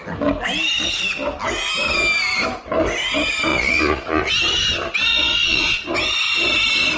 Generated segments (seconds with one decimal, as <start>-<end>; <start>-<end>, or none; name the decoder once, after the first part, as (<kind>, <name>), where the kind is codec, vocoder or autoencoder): 3.5-4.3 (vocoder, Vocos); 5.1-5.8